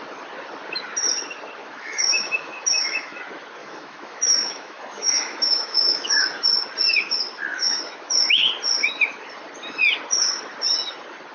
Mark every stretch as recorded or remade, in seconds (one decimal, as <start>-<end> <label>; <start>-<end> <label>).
0.0-1.6 recorded; 1.6-3.2 remade; 3.2-3.6 recorded; 3.6-6.2 remade; 6.2-7.5 recorded; 7.5-8.5 remade; 8.5-11.3 recorded